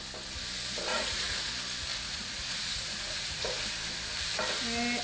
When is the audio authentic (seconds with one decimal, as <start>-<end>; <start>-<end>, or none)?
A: 0.0-0.9; 1.5-1.9; 3.6-5.0